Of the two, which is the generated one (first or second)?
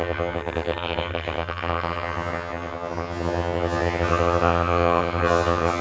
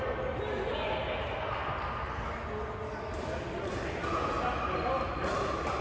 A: first